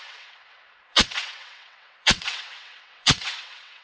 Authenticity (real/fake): fake